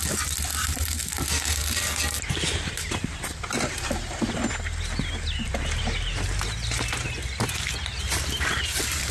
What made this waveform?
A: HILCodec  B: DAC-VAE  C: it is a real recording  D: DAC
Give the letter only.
C